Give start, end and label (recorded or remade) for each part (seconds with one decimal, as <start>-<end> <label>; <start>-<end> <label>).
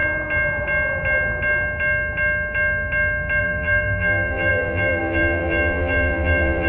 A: 0.0-3.4 recorded; 3.4-6.7 remade